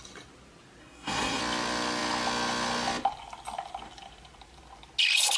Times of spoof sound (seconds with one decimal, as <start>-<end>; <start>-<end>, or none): 0.8-1.4